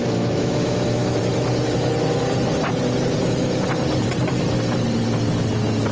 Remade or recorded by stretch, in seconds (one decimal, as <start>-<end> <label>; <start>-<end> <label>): 0.0-1.2 remade; 1.2-5.9 recorded